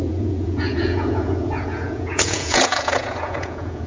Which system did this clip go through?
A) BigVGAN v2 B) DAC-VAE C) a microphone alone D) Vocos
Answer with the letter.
D